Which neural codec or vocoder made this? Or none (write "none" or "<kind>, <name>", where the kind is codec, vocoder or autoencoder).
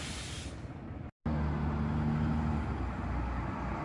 none